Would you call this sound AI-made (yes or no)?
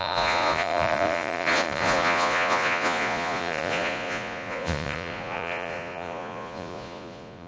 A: yes